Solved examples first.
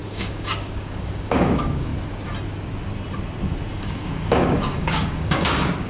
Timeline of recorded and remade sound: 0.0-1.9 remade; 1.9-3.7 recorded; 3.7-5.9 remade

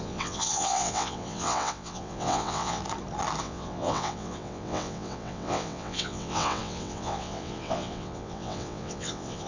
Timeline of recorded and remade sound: 0.0-2.8 remade; 2.8-3.4 recorded; 3.4-9.5 remade

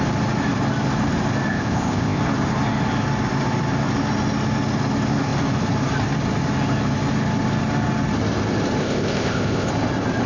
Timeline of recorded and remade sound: 0.0-1.5 recorded; 1.5-2.2 remade; 2.2-8.8 recorded; 8.8-9.7 remade; 9.7-10.3 recorded

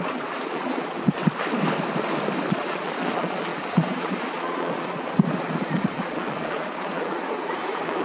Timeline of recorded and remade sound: 0.0-1.2 remade; 1.2-2.5 recorded; 2.5-8.0 remade

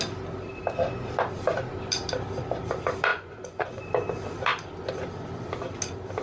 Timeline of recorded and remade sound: 0.0-3.1 recorded; 3.1-3.8 remade; 3.8-6.2 recorded

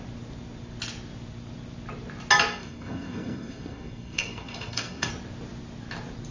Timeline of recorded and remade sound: 0.0-2.5 recorded; 2.5-5.1 remade; 5.1-6.3 recorded